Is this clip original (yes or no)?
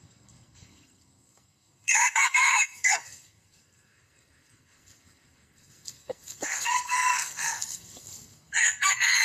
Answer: no